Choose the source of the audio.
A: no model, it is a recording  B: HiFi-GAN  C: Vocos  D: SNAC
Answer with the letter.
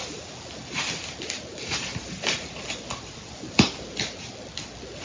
A